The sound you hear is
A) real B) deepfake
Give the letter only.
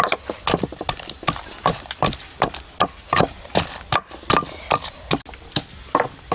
A